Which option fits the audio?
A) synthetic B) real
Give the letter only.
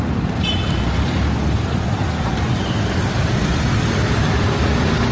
B